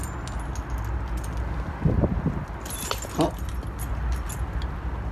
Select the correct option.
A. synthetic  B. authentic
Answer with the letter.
B